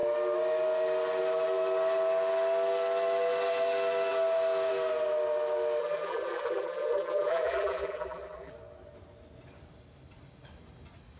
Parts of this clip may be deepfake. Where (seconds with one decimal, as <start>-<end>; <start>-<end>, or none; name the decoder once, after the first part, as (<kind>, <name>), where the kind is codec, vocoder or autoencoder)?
5.8-8.5 (vocoder, BigVGAN v2)